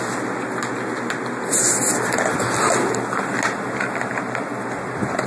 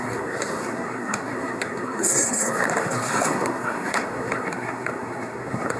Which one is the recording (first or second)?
first